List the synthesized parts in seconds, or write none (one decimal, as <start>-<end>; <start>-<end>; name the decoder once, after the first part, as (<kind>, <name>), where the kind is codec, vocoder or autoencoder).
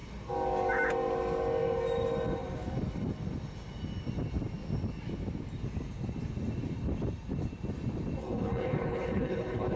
8.2-9.8 (codec, HILCodec)